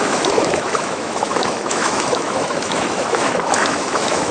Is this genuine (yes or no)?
no